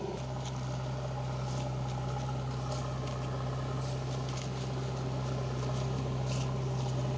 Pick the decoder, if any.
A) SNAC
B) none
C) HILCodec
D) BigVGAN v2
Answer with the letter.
B